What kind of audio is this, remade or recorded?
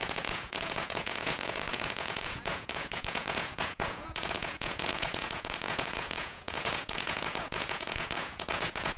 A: remade